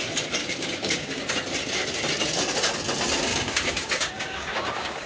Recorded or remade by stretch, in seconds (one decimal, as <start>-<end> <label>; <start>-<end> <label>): 0.0-0.4 recorded; 0.4-1.3 remade; 1.3-3.3 recorded; 3.3-5.1 remade